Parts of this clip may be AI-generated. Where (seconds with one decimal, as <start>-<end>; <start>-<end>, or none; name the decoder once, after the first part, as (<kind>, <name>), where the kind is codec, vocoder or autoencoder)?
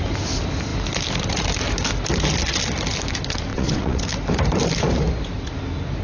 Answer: 3.5-4.0 (vocoder, WaveNeXt)